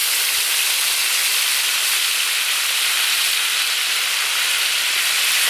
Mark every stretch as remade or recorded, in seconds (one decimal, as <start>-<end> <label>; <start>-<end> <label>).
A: 0.0-5.5 recorded